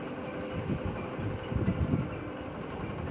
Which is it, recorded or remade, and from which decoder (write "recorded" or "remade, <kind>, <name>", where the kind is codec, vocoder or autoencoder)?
recorded